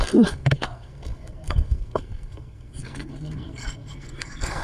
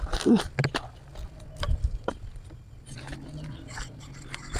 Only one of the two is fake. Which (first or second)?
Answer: first